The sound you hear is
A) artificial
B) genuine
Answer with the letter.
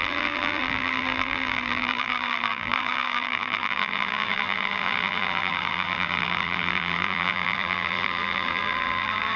A